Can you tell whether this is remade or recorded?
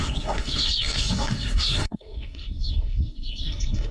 remade